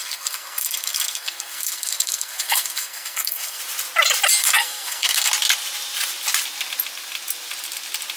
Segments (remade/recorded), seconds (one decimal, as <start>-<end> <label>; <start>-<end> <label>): 0.0-3.6 remade; 3.6-4.4 recorded; 4.4-5.3 remade; 5.3-8.2 recorded